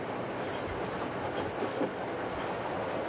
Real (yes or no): yes